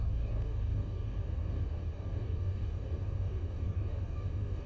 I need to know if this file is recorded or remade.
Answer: remade